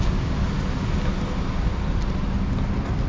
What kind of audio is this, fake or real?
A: real